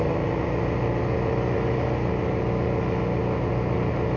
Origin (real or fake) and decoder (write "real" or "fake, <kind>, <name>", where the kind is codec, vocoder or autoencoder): real